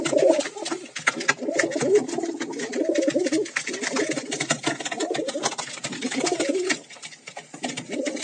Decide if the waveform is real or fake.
real